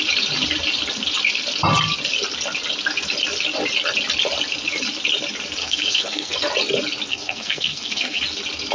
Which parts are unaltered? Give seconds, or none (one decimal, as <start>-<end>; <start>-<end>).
0.0-5.6; 6.4-7.1; 8.2-8.7